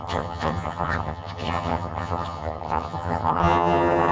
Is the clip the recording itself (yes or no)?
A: no